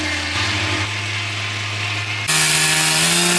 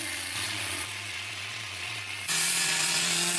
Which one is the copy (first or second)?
second